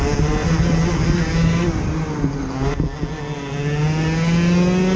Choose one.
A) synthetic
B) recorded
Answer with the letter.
B